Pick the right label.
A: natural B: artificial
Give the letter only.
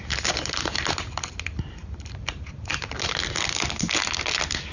A